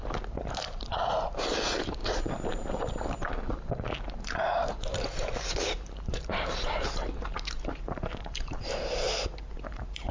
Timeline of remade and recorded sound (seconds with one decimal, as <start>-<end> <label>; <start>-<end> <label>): 0.0-10.1 remade